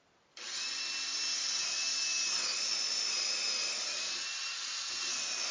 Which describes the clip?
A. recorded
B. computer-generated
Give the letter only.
A